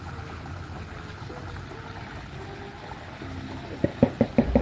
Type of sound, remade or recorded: recorded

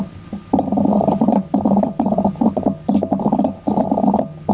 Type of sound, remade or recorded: recorded